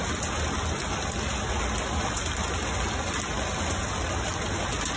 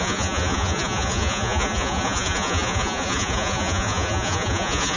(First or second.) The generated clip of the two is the second